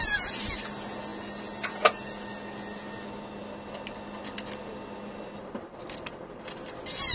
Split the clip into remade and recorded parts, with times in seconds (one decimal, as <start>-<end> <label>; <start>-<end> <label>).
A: 0.0-7.1 recorded